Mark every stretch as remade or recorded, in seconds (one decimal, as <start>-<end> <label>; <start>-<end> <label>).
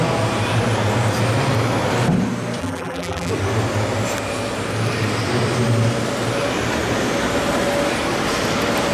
0.0-2.6 recorded; 2.6-3.3 remade; 3.3-8.9 recorded